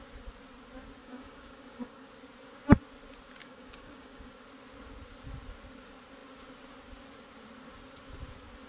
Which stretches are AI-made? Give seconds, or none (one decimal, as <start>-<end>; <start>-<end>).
1.0-2.1; 3.4-4.3